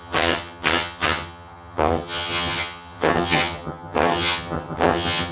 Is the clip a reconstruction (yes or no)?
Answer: yes